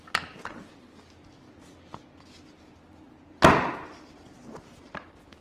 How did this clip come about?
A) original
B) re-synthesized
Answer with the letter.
A